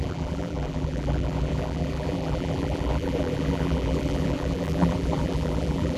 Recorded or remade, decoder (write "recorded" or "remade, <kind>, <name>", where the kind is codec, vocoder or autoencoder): remade, vocoder, BigVGAN v2